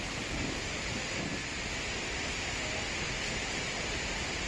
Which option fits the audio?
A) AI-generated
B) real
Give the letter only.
B